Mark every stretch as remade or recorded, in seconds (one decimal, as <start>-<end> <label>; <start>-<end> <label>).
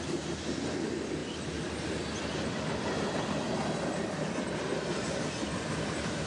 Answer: 0.0-6.3 recorded